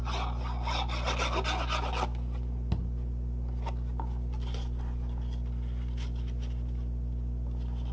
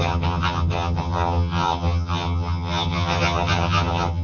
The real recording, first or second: first